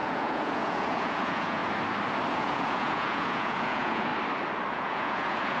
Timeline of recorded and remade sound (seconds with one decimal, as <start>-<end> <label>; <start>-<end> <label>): 0.0-1.6 remade; 1.6-2.3 recorded; 2.3-4.1 remade; 4.1-4.7 recorded; 4.7-5.6 remade

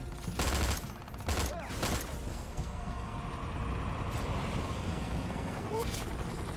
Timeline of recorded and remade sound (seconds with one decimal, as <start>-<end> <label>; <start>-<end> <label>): 0.0-2.3 recorded; 2.3-3.2 remade; 3.2-4.6 recorded; 4.6-6.0 remade; 6.0-6.6 recorded

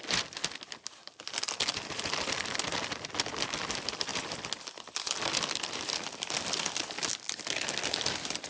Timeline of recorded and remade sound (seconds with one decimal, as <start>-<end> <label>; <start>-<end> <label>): 0.0-8.5 recorded

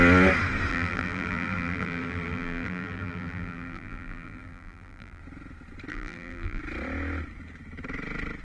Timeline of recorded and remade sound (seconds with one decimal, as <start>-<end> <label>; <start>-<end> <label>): 0.0-0.7 recorded; 0.7-5.2 remade; 5.2-5.9 recorded; 5.9-6.6 remade; 6.6-8.4 recorded

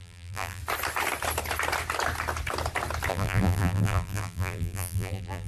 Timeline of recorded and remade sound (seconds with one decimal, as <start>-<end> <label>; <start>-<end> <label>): 0.0-0.6 remade; 0.6-3.1 recorded; 3.1-5.5 remade